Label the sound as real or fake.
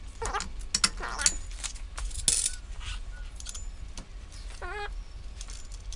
real